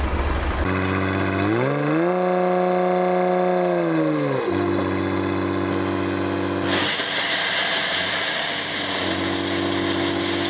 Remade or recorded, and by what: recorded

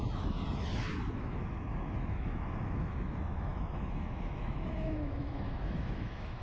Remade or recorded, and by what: remade, autoencoder, DAC-VAE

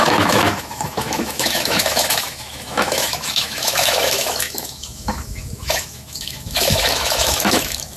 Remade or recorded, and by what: remade, autoencoder, DAC-VAE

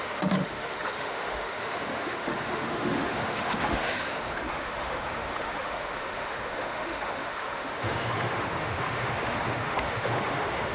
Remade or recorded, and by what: remade, autoencoder, DAC-VAE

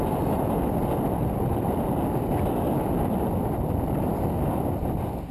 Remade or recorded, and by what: recorded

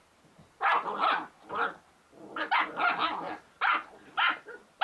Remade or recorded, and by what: recorded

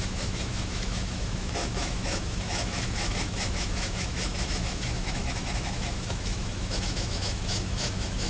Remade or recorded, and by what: remade, autoencoder, DAC-VAE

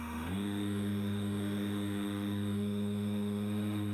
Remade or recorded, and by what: remade, autoencoder, DAC-VAE